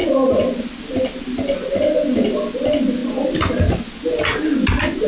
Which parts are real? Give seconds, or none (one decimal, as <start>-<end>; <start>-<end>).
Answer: 0.0-5.1